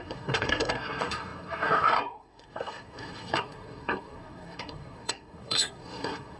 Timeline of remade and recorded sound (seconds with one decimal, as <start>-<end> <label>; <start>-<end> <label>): 0.0-6.4 remade